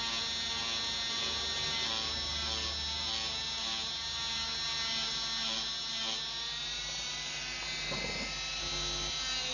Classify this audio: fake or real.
real